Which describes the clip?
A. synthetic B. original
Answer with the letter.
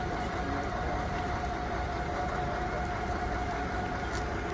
B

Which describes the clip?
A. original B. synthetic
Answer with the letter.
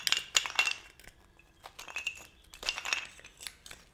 A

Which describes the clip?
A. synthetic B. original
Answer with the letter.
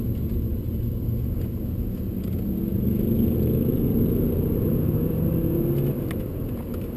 B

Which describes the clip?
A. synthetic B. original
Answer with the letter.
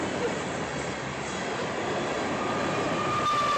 B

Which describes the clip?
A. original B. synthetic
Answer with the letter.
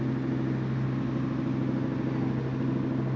A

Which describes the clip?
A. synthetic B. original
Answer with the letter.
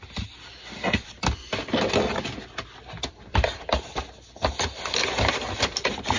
B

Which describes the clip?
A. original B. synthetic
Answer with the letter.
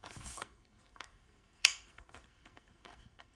B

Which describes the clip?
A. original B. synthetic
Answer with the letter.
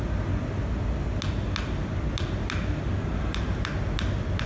A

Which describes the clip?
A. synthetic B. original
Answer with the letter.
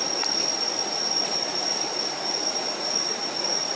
B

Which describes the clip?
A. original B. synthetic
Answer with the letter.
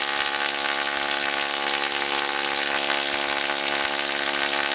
A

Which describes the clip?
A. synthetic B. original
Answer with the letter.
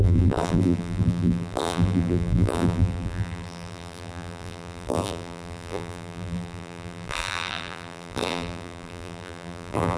A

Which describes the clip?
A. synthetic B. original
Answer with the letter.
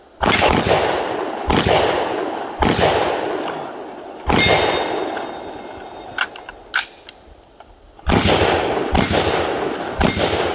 B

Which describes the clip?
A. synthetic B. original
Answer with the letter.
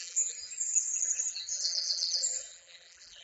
A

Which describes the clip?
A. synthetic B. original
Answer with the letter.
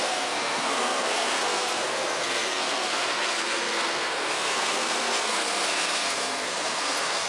A